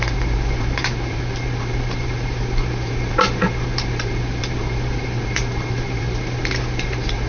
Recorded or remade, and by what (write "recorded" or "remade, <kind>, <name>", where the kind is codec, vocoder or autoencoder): remade, vocoder, BigVGAN v2